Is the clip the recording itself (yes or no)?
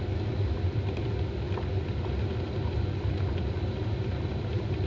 yes